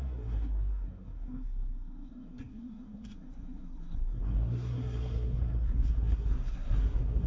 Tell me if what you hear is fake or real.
fake